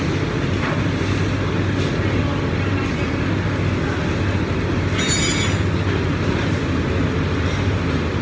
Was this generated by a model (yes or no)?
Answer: no